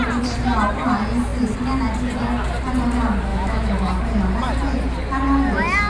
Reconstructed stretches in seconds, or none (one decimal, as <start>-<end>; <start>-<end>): 3.3-3.9